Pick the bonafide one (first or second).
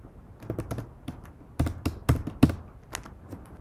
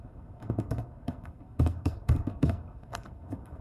first